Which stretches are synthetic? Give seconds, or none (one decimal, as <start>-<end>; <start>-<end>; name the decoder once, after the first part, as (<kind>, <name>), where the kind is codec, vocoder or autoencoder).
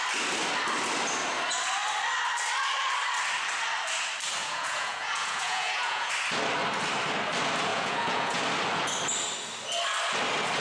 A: 4.4-6.1 (vocoder, Vocos); 7.7-8.4